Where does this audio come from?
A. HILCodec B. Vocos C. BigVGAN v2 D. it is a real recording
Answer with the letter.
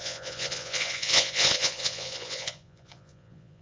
B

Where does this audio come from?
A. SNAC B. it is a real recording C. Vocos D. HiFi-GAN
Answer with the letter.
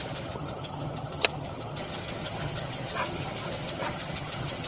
D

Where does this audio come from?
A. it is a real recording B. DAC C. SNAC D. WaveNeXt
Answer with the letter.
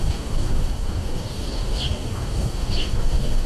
B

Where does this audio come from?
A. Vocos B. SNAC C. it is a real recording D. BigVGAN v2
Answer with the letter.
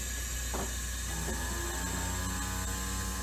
C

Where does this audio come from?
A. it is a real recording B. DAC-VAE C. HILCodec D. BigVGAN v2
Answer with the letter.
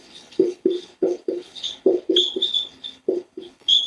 C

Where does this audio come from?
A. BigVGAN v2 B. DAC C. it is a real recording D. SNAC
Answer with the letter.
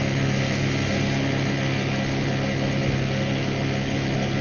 C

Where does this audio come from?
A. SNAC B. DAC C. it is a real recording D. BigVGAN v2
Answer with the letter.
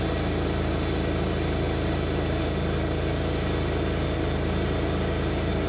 C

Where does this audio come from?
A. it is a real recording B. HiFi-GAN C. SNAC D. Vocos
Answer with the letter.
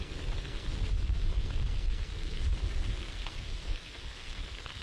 C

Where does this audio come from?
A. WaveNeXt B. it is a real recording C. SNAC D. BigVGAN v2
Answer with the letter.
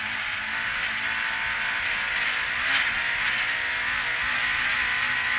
B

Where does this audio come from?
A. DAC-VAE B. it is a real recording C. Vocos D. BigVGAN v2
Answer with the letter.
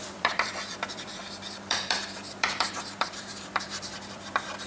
D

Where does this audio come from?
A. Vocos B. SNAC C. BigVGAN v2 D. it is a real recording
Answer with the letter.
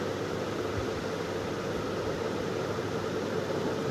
D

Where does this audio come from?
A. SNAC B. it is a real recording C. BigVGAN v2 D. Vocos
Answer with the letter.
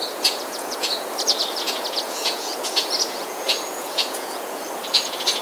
D